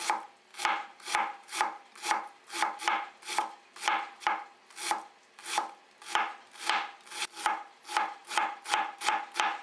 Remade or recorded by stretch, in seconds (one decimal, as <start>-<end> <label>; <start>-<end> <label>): 0.0-0.5 recorded; 0.5-3.1 remade; 3.1-8.2 recorded; 8.2-9.2 remade; 9.2-9.6 recorded